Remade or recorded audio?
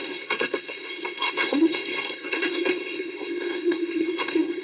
remade